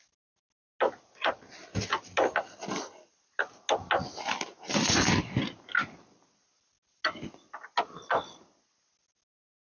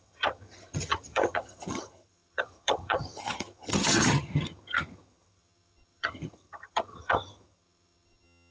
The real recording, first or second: first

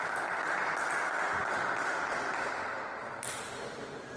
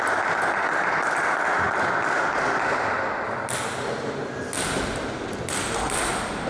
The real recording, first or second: second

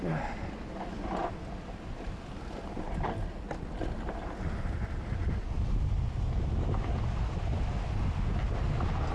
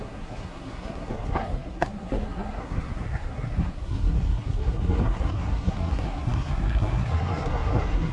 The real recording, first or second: first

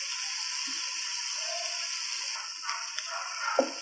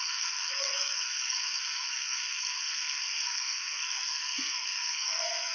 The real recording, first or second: first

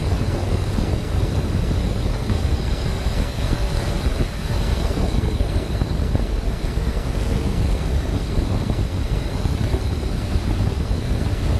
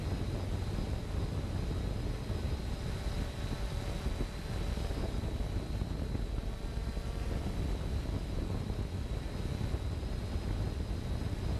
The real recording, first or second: second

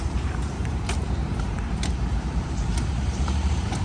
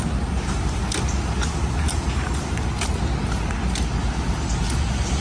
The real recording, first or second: second